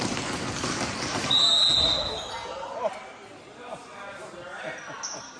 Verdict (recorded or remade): recorded